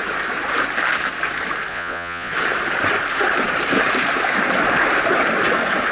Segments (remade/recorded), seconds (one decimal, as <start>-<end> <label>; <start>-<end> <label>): 0.0-1.7 recorded; 1.7-2.3 remade; 2.3-5.9 recorded